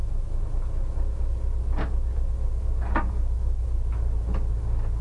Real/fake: real